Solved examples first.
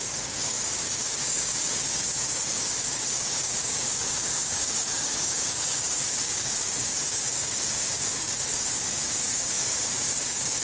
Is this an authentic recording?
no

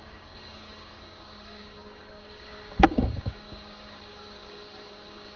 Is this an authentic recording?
no